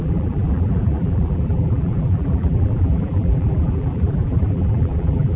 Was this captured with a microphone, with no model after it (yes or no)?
no